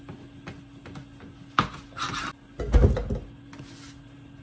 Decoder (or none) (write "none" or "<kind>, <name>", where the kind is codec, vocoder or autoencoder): none